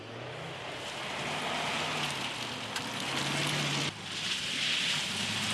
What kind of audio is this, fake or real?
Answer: real